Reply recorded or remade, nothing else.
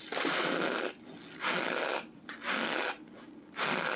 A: recorded